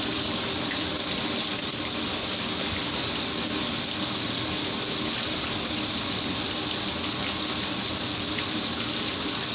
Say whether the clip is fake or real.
real